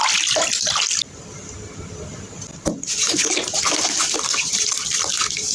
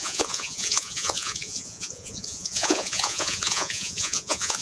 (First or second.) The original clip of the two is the first